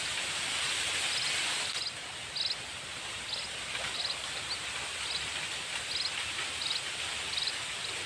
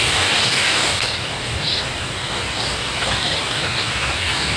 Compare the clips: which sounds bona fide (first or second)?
first